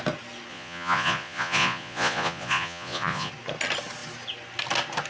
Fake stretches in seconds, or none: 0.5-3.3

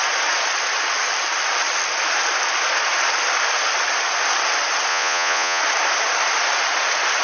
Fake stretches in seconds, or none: 4.9-5.6

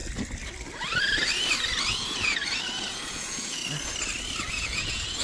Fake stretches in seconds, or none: 1.9-2.4; 2.9-3.6; 4.5-5.2

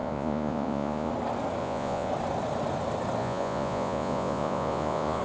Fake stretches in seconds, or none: 0.0-1.1; 1.6-2.1; 3.2-5.2

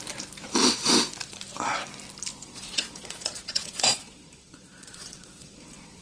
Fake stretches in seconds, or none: 2.4-6.0